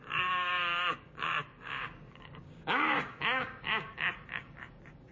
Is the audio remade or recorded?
remade